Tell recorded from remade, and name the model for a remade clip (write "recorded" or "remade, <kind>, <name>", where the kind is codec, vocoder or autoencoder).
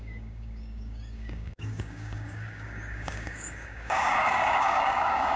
remade, codec, DAC